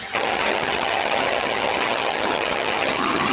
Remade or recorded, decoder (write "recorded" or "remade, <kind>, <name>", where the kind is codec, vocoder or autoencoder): remade, vocoder, HiFi-GAN